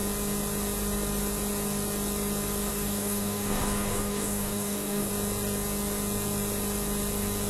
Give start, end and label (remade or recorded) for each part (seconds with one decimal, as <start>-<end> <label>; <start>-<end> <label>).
0.0-2.7 recorded; 2.7-5.1 remade; 5.1-7.5 recorded